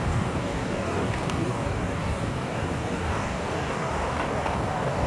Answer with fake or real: fake